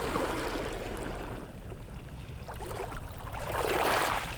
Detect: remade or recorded remade